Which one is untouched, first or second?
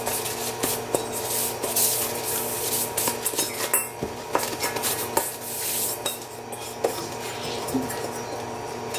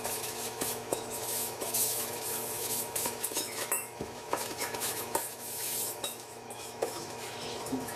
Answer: first